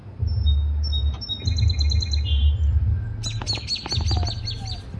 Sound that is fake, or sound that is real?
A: real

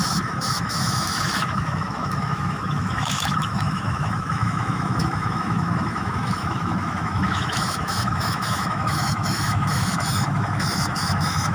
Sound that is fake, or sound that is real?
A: fake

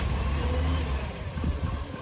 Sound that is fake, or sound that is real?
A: real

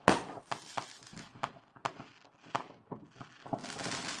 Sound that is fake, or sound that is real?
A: real